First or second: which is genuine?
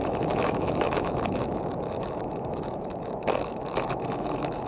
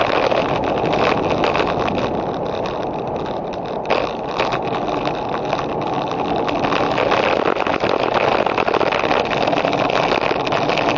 second